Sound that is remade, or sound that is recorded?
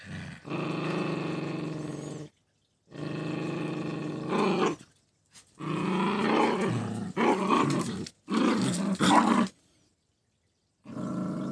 recorded